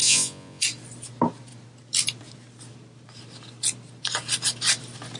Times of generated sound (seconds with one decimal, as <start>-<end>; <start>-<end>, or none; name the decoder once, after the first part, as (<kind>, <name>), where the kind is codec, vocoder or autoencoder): 0.0-0.6 (vocoder, Vocos)